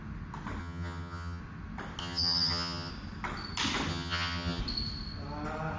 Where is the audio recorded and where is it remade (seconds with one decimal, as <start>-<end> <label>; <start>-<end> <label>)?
0.0-0.6 recorded; 0.6-1.4 remade; 1.4-2.0 recorded; 2.0-2.9 remade; 2.9-3.9 recorded; 3.9-4.6 remade; 4.6-5.8 recorded